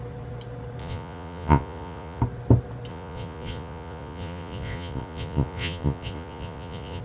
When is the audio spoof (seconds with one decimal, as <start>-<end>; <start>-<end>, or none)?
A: 0.8-2.2; 2.9-7.0